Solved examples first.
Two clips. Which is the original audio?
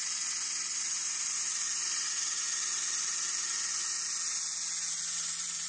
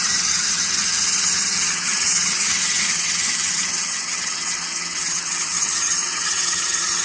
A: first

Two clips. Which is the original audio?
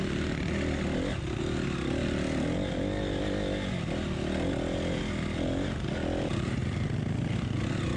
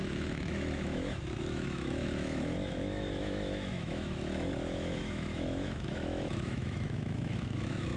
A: first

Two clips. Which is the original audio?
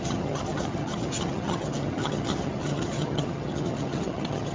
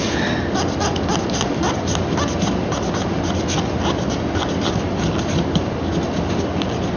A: second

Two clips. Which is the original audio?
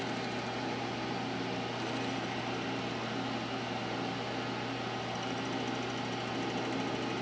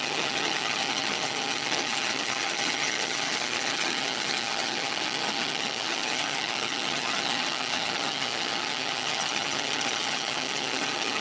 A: first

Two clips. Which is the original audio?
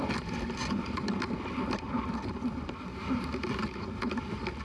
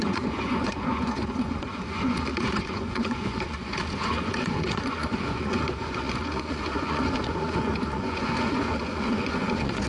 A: first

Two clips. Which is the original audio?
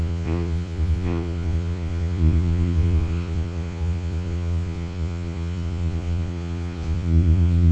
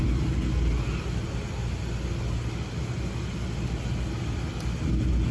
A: second